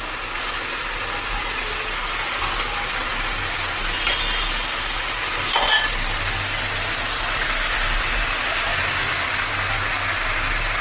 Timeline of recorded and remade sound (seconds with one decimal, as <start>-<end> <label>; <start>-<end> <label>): 0.0-10.8 recorded